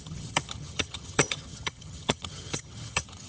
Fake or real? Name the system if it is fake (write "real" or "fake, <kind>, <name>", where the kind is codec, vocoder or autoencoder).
fake, vocoder, HiFi-GAN